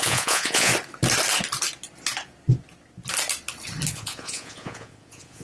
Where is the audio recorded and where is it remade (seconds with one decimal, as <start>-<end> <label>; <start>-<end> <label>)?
0.0-0.7 remade; 0.7-3.9 recorded; 3.9-5.4 remade